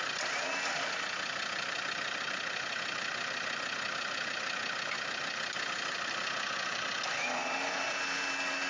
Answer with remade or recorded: recorded